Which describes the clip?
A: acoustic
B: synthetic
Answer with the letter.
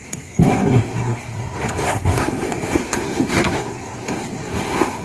B